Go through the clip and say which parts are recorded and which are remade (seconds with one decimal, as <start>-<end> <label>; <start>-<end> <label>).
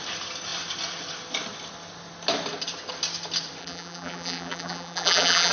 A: 0.0-3.6 recorded; 3.6-5.5 remade